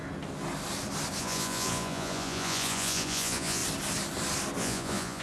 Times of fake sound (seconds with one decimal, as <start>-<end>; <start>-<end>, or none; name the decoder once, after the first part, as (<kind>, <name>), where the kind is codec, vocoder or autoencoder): 1.2-3.6 (vocoder, Vocos); 4.6-5.2